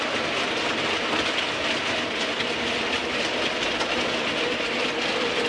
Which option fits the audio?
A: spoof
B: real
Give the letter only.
B